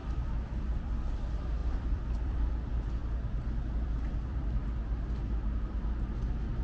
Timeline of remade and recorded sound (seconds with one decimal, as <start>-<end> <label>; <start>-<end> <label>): 0.0-1.6 recorded; 1.6-2.5 remade; 2.5-3.0 recorded; 3.0-4.4 remade; 4.4-6.6 recorded